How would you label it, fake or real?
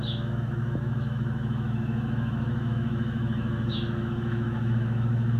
fake